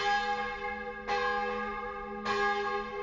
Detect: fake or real real